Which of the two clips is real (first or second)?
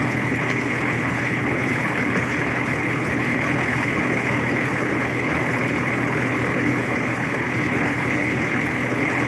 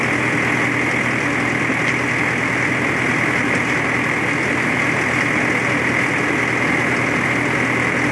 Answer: second